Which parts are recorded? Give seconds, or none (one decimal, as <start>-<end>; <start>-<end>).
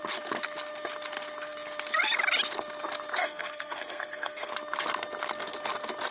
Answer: 0.0-3.2; 4.5-6.1